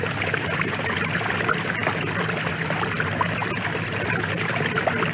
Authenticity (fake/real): real